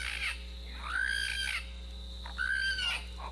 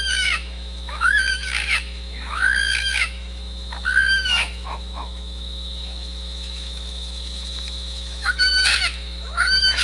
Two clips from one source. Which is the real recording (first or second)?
first